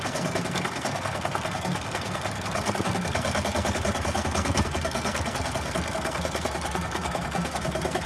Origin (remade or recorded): remade